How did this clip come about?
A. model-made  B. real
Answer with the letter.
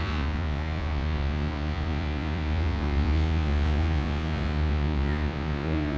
A